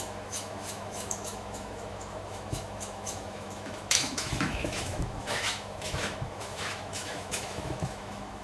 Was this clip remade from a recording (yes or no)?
yes